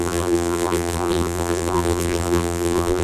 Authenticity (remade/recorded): remade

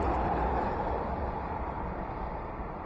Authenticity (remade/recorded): remade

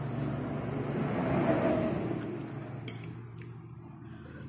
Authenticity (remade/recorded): recorded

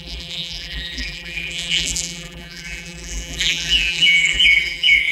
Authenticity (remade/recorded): remade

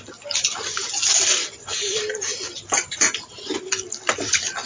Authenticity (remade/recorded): remade